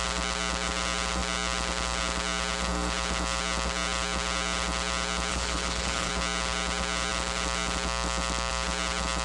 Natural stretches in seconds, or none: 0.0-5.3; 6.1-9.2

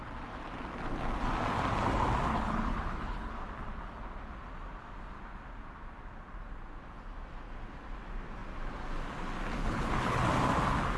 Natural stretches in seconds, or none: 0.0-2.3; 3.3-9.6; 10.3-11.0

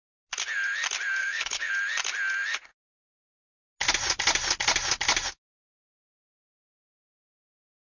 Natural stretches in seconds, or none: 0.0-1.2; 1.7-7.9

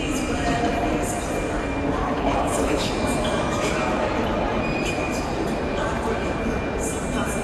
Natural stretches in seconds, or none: 0.0-2.0; 2.9-7.4